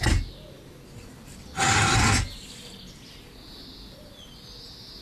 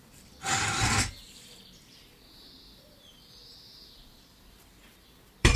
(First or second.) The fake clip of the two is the second